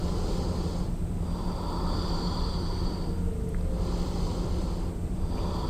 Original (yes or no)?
yes